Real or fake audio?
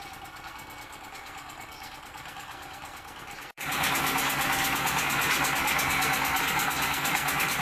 fake